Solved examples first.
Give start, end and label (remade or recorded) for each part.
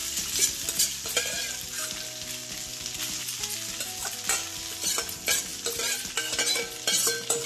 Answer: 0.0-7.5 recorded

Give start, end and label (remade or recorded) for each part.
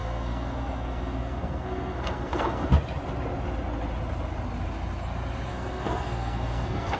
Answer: 0.0-2.7 remade; 2.7-5.5 recorded; 5.5-7.0 remade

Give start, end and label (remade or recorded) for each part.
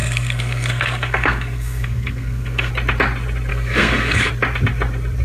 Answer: 0.0-2.7 remade; 2.7-3.5 recorded; 3.5-4.3 remade; 4.3-5.2 recorded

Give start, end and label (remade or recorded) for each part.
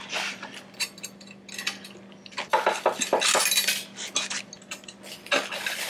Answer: 0.0-5.9 recorded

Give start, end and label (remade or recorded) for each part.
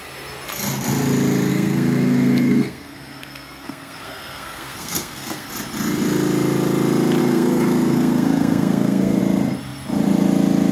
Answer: 0.0-1.5 recorded; 1.5-5.5 remade; 5.5-7.2 recorded; 7.2-9.2 remade; 9.2-10.7 recorded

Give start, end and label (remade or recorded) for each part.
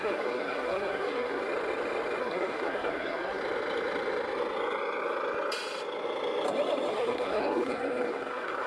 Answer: 0.0-1.4 remade; 1.4-2.2 recorded; 2.2-3.4 remade; 3.4-6.9 recorded; 6.9-8.7 remade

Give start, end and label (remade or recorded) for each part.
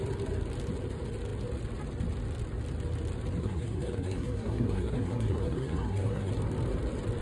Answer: 0.0-3.4 recorded; 3.4-6.3 remade; 6.3-7.2 recorded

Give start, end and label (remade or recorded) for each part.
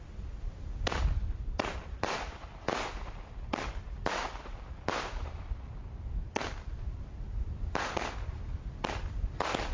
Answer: 0.0-9.7 recorded